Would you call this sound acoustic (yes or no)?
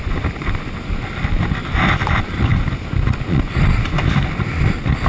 yes